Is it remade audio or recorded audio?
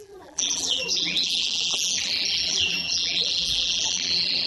remade